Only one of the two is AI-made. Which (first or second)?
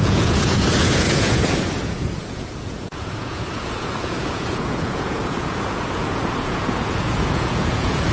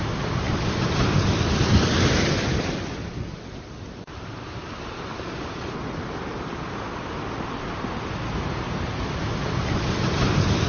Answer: first